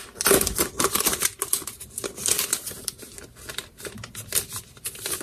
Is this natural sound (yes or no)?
yes